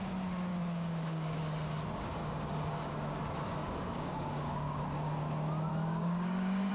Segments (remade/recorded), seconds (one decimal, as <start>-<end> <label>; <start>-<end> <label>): 0.0-0.5 recorded; 0.5-1.4 remade; 1.4-2.2 recorded; 2.2-3.2 remade; 3.2-3.6 recorded; 3.6-4.8 remade; 4.8-5.7 recorded; 5.7-6.7 remade